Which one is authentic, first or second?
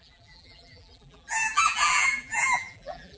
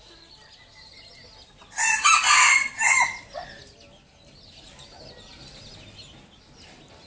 second